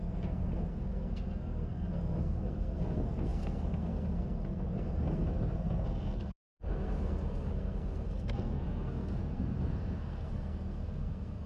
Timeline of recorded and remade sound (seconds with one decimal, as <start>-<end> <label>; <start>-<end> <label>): 0.0-11.5 remade